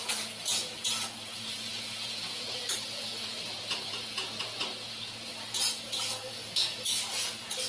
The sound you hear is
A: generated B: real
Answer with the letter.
A